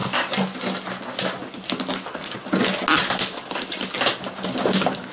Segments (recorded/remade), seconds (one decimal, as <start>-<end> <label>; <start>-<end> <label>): 0.0-5.1 recorded